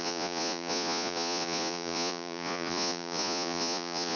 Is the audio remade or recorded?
remade